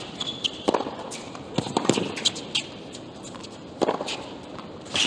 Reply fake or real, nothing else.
fake